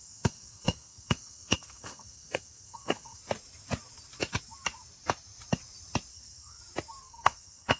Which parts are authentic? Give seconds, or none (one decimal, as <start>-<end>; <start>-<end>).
3.2-6.1; 6.6-7.0